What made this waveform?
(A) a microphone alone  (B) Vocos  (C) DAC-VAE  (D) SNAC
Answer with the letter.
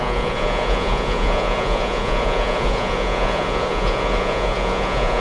B